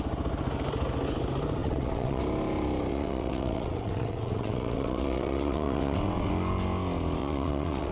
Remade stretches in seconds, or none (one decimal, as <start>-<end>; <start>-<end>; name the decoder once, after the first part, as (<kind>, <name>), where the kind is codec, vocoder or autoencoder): 1.6-2.2 (vocoder, WaveNeXt); 2.9-6.3; 7.2-7.9